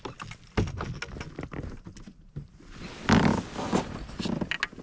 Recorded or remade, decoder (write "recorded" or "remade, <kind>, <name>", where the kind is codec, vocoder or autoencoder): recorded